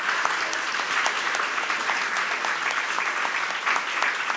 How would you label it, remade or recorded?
recorded